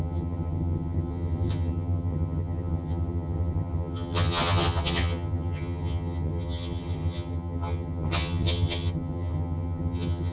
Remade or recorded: remade